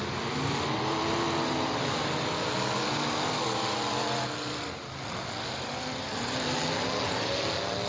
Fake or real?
real